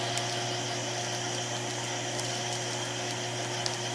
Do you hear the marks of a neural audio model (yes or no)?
no